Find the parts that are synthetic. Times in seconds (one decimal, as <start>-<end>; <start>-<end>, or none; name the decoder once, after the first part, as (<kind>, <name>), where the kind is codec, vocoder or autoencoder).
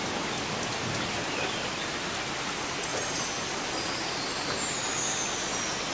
none